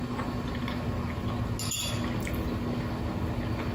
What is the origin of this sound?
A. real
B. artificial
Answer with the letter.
A